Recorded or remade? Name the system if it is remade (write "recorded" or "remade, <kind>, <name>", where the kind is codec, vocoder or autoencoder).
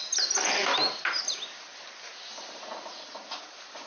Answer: recorded